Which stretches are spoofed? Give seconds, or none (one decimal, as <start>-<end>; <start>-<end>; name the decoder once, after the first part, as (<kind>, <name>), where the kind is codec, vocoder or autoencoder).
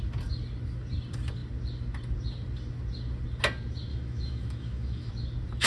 3.9-5.1 (autoencoder, DAC-VAE)